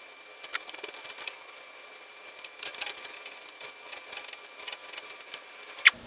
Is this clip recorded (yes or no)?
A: no